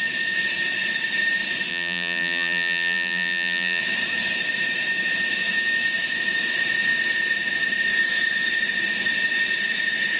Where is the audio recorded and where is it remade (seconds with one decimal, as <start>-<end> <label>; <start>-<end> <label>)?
0.0-1.7 recorded; 1.7-3.8 remade; 3.8-10.2 recorded